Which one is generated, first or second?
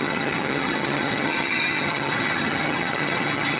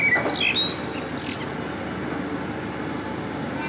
first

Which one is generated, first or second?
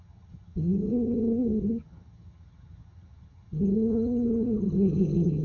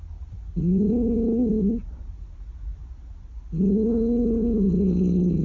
first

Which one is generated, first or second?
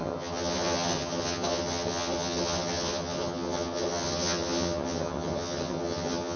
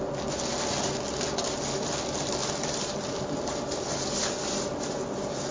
first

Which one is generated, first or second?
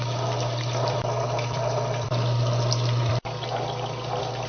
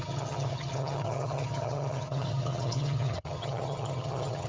second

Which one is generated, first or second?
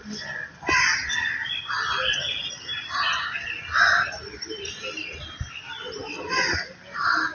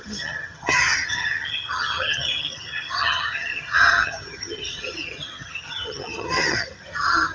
second